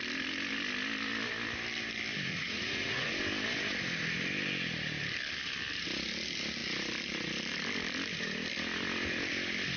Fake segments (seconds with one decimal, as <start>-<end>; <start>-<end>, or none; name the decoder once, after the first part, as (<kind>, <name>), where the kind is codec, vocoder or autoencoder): 2.3-3.1 (vocoder, Vocos)